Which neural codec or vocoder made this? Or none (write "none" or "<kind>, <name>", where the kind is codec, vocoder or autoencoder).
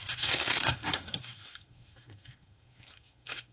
codec, SNAC